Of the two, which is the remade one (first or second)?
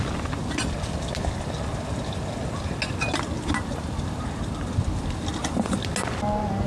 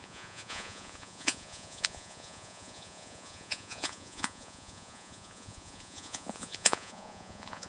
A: second